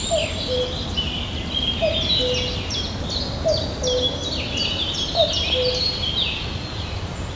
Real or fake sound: real